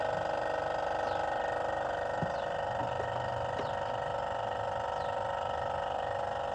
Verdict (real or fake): real